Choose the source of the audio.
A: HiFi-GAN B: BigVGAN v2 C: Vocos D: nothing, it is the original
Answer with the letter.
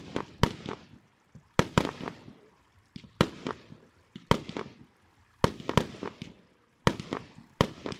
D